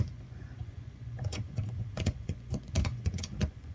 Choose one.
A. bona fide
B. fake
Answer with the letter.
B